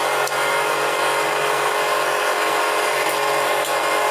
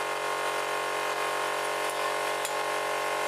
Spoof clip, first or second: first